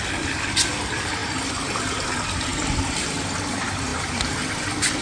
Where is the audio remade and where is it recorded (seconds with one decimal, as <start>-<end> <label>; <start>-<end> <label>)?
0.0-1.2 recorded; 1.2-1.9 remade; 1.9-2.5 recorded; 2.5-3.2 remade; 3.2-3.9 recorded; 3.9-5.0 remade